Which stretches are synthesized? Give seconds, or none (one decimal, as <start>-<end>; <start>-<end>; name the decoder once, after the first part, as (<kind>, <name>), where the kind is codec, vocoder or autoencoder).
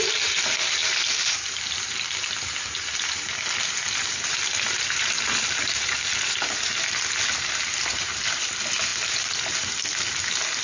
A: none